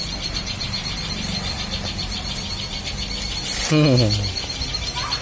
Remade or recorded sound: recorded